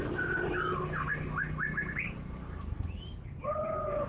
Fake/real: real